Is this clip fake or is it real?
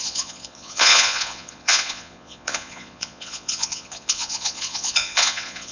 fake